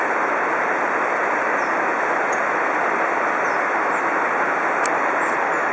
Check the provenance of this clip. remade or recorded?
recorded